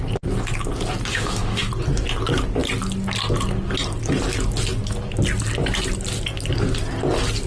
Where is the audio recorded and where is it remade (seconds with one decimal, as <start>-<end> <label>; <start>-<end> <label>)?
0.0-1.1 recorded; 1.1-1.7 remade; 1.7-7.5 recorded